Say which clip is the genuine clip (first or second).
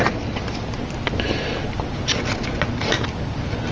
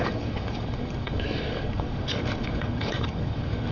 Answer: first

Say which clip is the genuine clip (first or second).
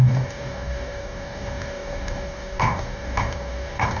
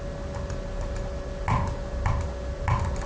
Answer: second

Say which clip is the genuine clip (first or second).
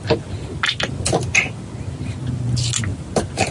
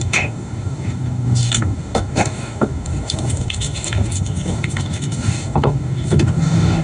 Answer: first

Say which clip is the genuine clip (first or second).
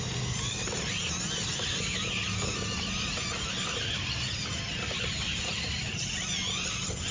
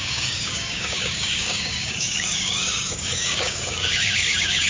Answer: first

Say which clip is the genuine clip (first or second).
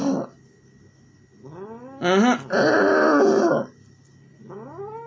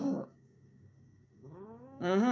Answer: first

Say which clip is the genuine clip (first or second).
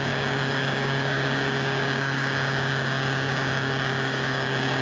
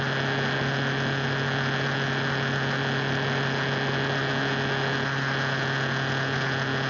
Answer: second